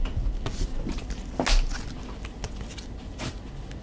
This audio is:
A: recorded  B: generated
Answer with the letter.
A